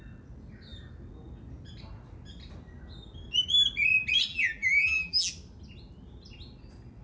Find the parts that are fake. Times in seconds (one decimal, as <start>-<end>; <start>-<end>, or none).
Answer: 4.3-5.3